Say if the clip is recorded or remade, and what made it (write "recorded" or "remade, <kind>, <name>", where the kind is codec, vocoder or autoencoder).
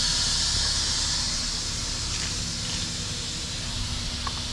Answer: recorded